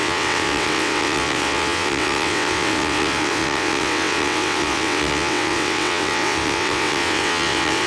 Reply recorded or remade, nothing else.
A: remade